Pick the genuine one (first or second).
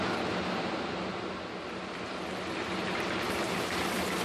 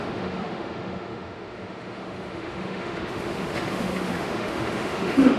first